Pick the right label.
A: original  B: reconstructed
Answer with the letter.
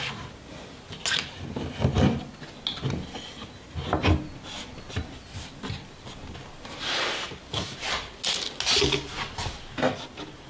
A